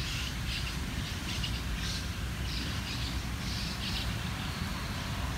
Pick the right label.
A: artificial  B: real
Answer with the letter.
B